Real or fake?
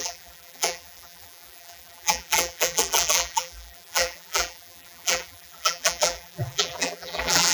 fake